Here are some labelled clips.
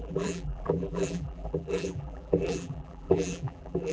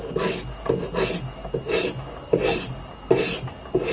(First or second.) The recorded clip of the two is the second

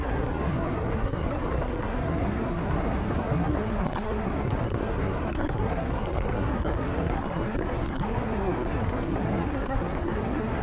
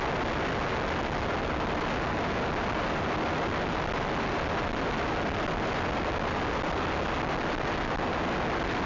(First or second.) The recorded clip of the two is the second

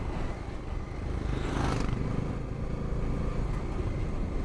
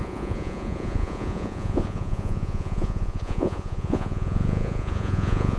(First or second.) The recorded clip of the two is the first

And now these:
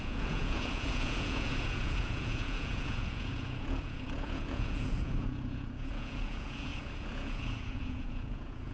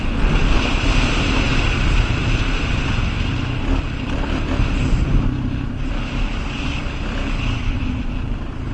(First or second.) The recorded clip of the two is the second